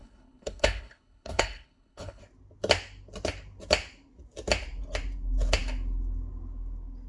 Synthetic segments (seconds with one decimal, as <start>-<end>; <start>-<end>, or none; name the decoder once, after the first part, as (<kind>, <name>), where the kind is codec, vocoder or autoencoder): 0.0-2.2 (codec, HILCodec)